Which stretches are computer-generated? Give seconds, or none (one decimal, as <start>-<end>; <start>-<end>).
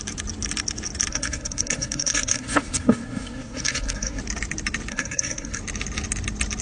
1.1-4.2; 4.9-5.6